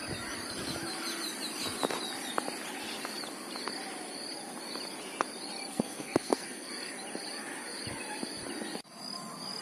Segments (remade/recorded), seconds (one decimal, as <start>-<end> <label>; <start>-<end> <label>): 0.0-5.7 recorded; 5.7-6.7 remade; 6.7-9.6 recorded

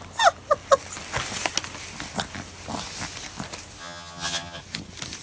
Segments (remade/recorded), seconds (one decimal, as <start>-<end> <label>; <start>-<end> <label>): 0.0-3.8 recorded; 3.8-4.6 remade; 4.6-5.2 recorded